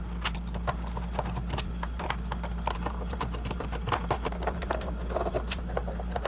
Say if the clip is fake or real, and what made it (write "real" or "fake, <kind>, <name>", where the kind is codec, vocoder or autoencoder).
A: real